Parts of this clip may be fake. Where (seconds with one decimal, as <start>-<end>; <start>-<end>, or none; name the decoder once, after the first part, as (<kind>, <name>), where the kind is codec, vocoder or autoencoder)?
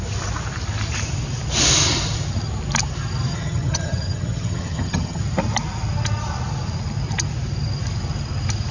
3.3-5.2 (vocoder, HiFi-GAN)